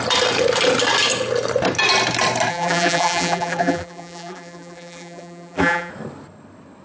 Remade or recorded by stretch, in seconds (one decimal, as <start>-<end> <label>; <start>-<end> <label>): 0.0-2.5 recorded; 2.5-5.9 remade; 5.9-6.8 recorded